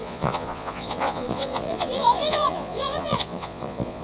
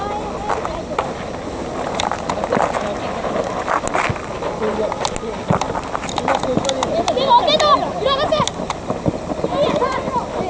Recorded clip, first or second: second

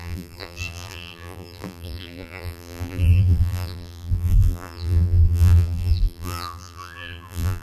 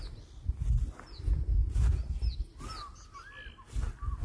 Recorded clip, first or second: second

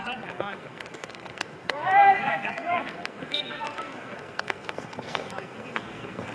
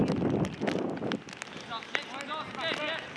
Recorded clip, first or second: second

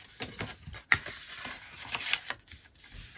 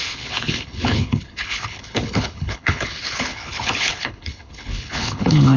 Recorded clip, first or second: first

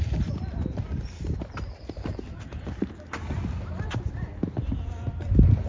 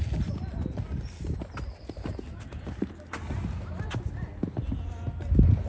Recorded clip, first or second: second